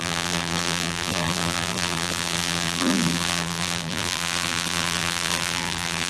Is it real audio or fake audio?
fake